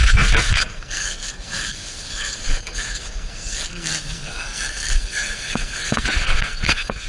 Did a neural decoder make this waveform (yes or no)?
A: yes